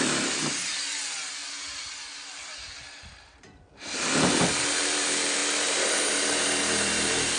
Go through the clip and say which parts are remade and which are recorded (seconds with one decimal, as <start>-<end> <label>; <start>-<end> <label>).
0.0-1.4 remade; 1.4-3.0 recorded; 3.0-7.4 remade